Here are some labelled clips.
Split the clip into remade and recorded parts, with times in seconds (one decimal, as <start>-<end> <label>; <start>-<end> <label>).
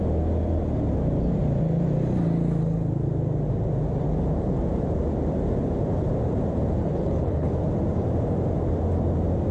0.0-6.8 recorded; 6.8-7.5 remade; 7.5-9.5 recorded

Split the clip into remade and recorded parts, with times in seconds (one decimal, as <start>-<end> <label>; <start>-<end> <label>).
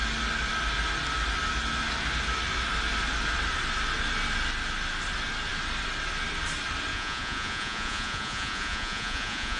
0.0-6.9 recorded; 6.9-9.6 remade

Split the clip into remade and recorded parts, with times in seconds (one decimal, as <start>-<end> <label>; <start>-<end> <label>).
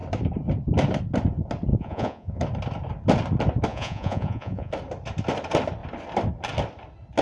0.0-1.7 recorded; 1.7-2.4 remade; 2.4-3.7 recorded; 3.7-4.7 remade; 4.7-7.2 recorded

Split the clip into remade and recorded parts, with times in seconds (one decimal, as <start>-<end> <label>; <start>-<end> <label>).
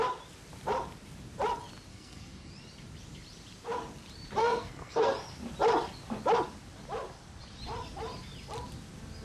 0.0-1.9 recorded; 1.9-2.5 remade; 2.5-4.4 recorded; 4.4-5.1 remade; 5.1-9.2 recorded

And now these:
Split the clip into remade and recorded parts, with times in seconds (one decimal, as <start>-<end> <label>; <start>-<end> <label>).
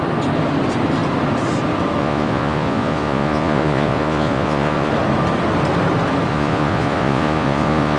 0.0-2.0 recorded; 2.0-4.9 remade; 4.9-6.3 recorded; 6.3-8.0 remade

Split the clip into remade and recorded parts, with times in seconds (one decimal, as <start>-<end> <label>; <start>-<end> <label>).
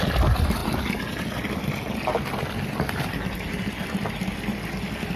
0.0-5.2 recorded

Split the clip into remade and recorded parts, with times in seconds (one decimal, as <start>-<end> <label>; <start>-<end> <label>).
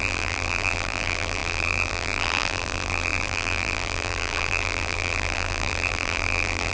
0.0-6.7 remade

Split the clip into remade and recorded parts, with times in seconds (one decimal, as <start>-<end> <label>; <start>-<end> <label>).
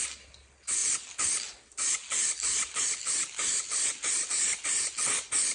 0.0-5.5 recorded